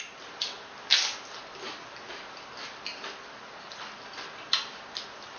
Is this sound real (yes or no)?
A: yes